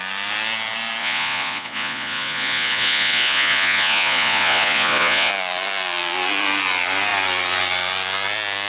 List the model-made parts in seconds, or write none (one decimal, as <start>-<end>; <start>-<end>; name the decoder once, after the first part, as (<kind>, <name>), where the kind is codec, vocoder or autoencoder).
1.0-5.3 (vocoder, Vocos)